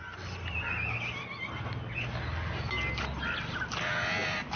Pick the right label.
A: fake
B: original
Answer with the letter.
B